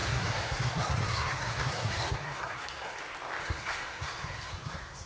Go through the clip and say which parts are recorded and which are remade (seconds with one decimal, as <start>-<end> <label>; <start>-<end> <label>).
0.0-3.0 remade; 3.0-3.4 recorded; 3.4-5.1 remade

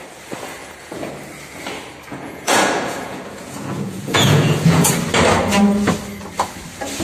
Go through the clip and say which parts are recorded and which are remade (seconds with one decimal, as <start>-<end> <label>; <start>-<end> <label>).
0.0-0.6 recorded; 0.6-1.1 remade; 1.1-2.1 recorded; 2.1-4.9 remade; 4.9-7.0 recorded

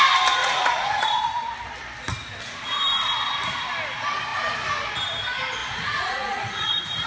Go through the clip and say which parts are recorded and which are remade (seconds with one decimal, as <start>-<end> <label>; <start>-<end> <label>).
0.0-0.4 recorded; 0.4-1.2 remade; 1.2-5.6 recorded; 5.6-7.1 remade

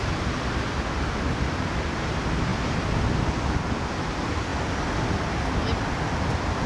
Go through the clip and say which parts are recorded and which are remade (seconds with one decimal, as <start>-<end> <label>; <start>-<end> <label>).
0.0-6.7 recorded

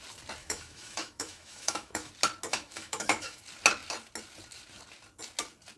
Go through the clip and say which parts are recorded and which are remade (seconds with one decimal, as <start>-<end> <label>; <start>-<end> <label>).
0.0-0.4 recorded; 0.4-2.1 remade; 2.1-2.5 recorded; 2.5-3.4 remade; 3.4-5.8 recorded

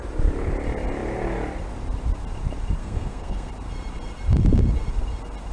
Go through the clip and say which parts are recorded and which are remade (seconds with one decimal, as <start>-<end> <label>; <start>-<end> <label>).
0.0-2.8 recorded; 2.8-3.5 remade; 3.5-5.5 recorded

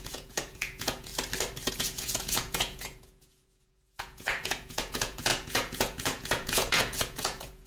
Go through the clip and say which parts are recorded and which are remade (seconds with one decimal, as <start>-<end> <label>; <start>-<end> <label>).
0.0-1.1 remade; 1.1-1.7 recorded; 1.7-7.7 remade

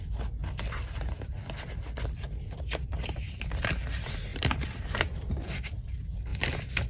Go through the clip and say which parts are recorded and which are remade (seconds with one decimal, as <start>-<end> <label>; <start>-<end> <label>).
0.0-0.4 remade; 0.4-3.8 recorded; 3.8-6.9 remade